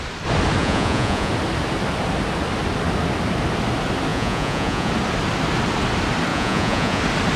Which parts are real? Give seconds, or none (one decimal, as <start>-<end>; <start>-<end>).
0.0-0.6; 1.3-4.1; 4.9-6.3; 7.0-7.4